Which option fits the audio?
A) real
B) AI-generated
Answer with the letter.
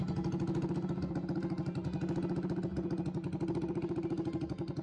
A